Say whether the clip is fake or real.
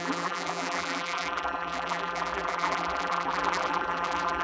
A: fake